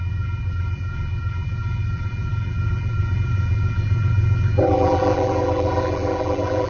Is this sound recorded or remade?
remade